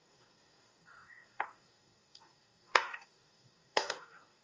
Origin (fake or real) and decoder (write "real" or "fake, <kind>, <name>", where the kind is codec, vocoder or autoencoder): fake, codec, DAC